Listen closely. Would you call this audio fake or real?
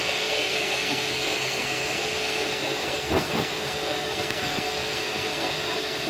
fake